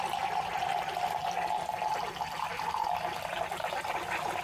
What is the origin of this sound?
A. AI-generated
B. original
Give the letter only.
B